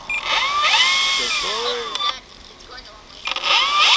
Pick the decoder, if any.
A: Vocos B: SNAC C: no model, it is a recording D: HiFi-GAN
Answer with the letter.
C